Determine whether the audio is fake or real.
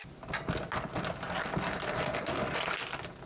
real